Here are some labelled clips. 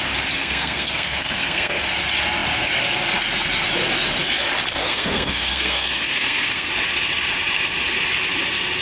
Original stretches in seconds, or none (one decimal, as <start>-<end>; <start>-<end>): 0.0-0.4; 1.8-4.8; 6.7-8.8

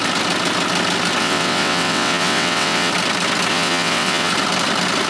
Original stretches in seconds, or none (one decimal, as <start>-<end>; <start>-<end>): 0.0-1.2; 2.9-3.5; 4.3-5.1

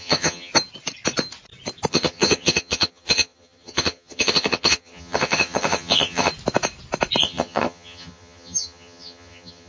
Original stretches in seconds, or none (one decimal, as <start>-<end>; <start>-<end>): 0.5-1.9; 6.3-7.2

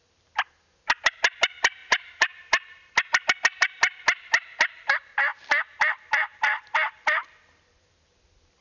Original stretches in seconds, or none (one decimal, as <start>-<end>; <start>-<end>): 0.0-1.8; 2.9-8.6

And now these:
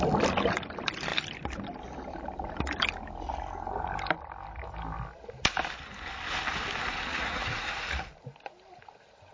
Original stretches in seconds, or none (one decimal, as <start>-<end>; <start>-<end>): 0.0-7.1; 8.1-9.3

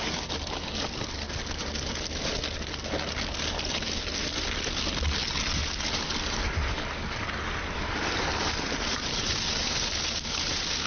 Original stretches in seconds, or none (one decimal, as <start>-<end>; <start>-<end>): 0.0-10.9

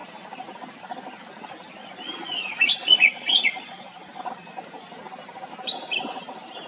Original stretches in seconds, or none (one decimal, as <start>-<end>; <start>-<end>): 0.0-1.8; 4.3-6.7